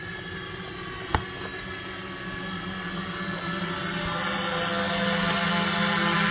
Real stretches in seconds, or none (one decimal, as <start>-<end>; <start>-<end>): 0.0-6.3